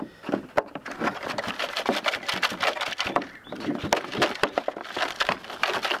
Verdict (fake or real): real